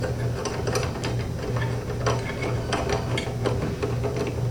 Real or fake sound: real